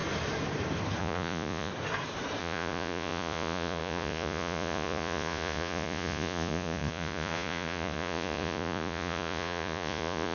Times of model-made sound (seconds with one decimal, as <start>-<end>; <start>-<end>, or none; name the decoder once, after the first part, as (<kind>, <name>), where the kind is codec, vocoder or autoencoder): 1.0-1.7 (vocoder, Vocos); 2.4-10.3